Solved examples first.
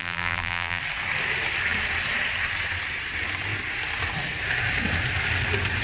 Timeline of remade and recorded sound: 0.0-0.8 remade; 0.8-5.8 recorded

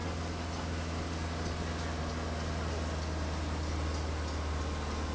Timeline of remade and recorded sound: 0.0-5.1 recorded

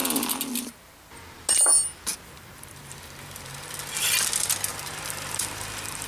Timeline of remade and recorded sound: 0.0-2.1 recorded; 2.1-3.7 remade; 3.7-4.7 recorded; 4.7-6.1 remade

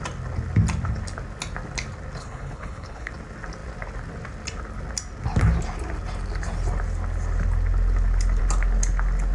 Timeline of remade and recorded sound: 0.0-2.2 recorded; 2.2-3.1 remade; 3.1-9.3 recorded

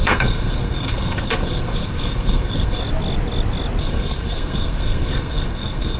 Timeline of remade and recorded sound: 0.0-2.8 remade; 2.8-3.8 recorded; 3.8-6.0 remade

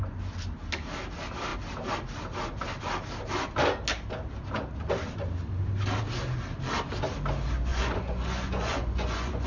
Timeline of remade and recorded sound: 0.0-7.7 recorded; 7.7-9.5 remade

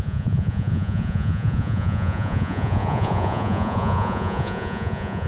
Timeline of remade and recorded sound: 0.0-5.3 remade